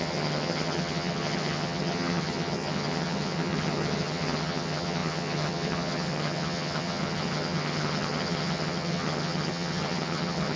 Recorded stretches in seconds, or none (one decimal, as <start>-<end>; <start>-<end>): none